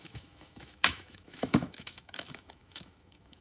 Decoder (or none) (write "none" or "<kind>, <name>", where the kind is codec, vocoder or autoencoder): autoencoder, DAC-VAE